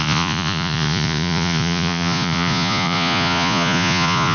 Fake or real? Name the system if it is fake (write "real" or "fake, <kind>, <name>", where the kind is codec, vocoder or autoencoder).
fake, vocoder, Vocos